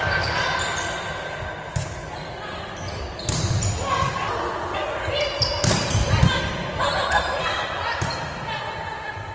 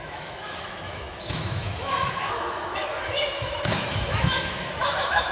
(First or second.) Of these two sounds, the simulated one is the second